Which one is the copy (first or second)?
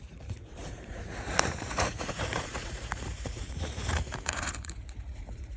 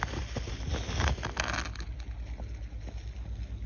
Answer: first